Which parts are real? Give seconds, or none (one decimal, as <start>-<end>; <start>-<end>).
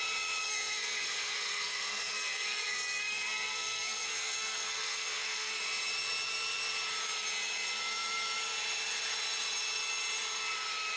0.0-0.4; 5.6-11.0